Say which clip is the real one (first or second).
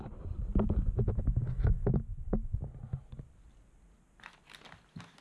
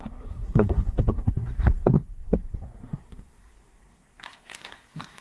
first